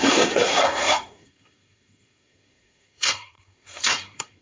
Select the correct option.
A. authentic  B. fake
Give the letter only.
B